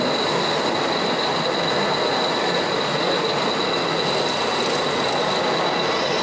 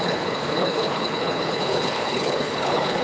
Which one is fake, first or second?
second